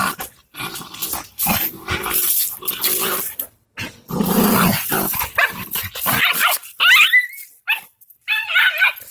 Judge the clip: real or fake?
real